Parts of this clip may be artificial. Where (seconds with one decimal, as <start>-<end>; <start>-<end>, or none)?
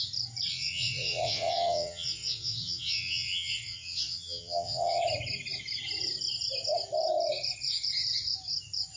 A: 0.5-5.0